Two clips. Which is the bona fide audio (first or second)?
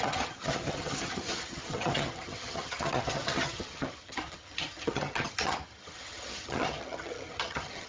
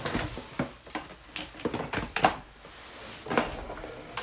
second